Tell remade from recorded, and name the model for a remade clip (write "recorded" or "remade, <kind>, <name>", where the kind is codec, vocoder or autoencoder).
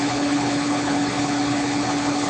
remade, codec, HILCodec